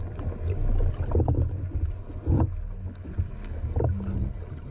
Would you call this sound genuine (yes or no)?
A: yes